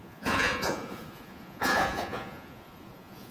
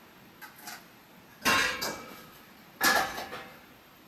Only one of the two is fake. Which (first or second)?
first